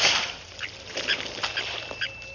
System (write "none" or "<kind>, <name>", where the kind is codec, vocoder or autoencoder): none